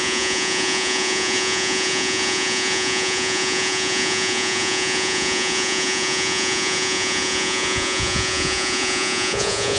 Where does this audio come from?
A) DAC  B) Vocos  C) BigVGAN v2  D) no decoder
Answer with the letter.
B